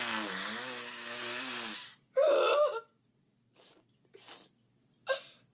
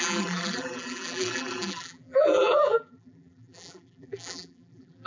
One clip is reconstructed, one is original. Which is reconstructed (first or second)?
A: second